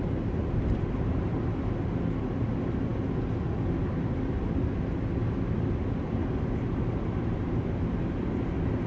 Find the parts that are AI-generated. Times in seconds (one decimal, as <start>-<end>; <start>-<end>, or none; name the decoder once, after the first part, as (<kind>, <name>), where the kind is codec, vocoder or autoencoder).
none